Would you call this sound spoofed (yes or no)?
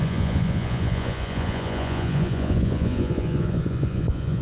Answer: yes